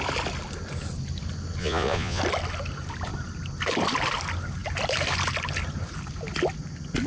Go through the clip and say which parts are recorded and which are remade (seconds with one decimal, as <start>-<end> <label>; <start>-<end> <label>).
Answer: 0.0-1.6 recorded; 1.6-2.2 remade; 2.2-7.1 recorded